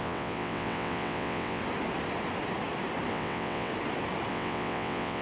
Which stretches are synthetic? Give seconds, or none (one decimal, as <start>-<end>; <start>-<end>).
0.0-1.6; 3.1-3.7; 4.3-5.2